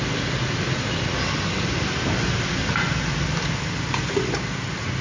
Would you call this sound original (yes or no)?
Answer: yes